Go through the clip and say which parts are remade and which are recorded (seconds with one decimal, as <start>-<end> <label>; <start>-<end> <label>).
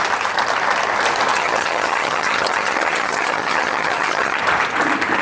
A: 0.0-1.3 recorded; 1.3-4.4 remade; 4.4-5.2 recorded